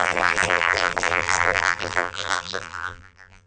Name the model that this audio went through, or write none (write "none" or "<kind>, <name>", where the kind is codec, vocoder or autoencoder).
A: vocoder, BigVGAN v2